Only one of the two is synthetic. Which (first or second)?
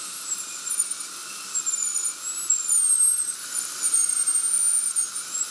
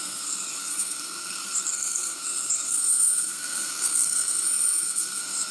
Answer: second